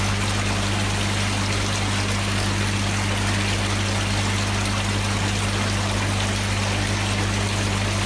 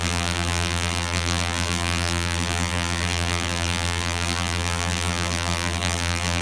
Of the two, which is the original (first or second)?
first